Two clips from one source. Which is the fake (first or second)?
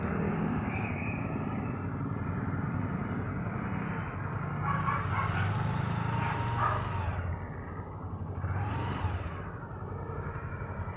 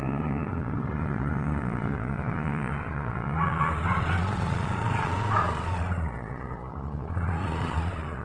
second